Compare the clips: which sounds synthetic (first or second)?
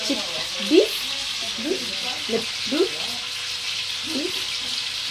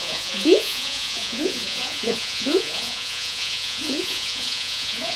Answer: second